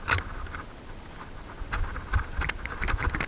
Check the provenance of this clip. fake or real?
real